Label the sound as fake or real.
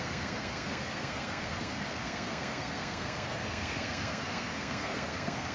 fake